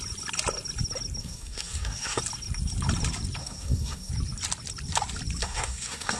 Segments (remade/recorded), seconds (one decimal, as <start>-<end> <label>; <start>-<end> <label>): 0.0-1.2 recorded; 1.2-2.2 remade; 2.2-3.4 recorded; 3.4-4.1 remade; 4.1-5.4 recorded; 5.4-6.2 remade